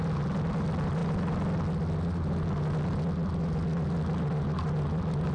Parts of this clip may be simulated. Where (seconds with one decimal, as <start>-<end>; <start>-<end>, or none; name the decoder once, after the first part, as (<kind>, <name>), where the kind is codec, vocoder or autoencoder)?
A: none